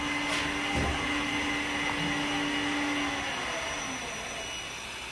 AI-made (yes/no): no